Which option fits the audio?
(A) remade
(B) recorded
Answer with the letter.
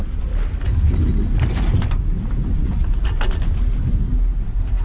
B